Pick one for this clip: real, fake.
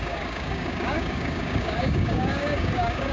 fake